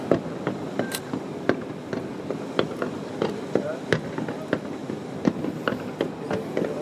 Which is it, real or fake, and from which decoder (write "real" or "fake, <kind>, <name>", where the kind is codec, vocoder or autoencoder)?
real